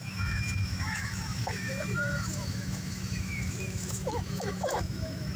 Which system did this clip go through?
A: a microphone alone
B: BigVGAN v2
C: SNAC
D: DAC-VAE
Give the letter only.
D